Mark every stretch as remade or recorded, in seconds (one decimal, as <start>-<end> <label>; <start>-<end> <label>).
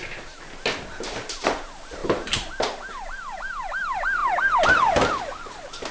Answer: 0.0-5.9 recorded